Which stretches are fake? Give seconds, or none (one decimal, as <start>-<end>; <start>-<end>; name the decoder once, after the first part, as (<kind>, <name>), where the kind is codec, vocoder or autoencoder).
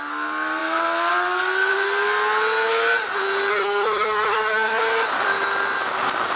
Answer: 3.5-4.8 (codec, SNAC)